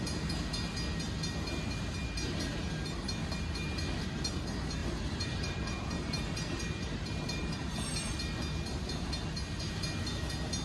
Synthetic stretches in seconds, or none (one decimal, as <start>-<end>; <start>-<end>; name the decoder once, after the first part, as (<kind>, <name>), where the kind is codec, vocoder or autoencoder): 4.8-7.8 (vocoder, BigVGAN v2)